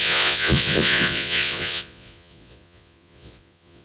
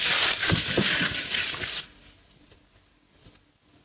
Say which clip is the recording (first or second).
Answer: second